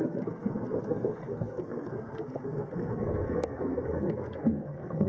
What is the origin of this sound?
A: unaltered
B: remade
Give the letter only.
B